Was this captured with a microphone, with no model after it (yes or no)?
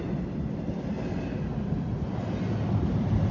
yes